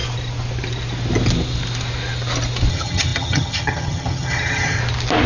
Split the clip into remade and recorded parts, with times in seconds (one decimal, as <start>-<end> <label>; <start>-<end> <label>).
0.0-2.7 recorded; 2.7-4.8 remade; 4.8-5.3 recorded